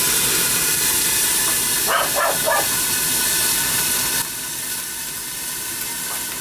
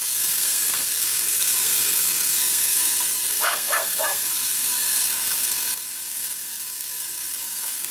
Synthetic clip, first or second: second